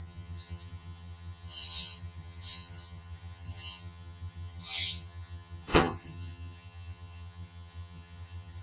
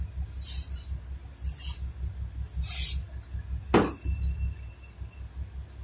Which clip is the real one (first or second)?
second